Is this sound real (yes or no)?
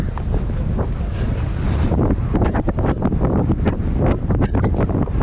yes